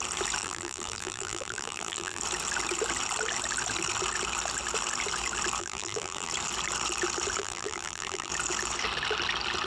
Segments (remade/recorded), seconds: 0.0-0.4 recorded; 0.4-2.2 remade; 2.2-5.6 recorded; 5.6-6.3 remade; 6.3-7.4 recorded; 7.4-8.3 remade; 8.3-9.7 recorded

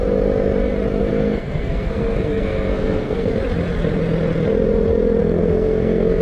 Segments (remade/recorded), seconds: 0.0-1.0 recorded; 1.0-3.3 remade; 3.3-5.2 recorded; 5.2-6.2 remade

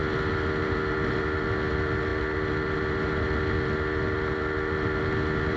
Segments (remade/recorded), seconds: 0.0-5.6 recorded

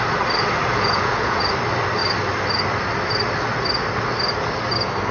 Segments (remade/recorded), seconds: 0.0-0.7 recorded; 0.7-1.5 remade; 1.5-5.1 recorded

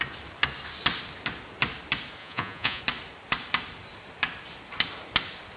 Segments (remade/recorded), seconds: 0.0-2.2 recorded; 2.2-2.8 remade; 2.8-5.6 recorded

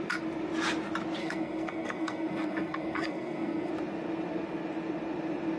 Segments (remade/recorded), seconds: 0.0-1.2 recorded; 1.2-3.7 remade; 3.7-5.6 recorded

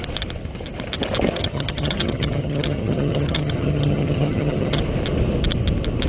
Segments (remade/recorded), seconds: 0.0-1.4 recorded; 1.4-4.8 remade; 4.8-6.1 recorded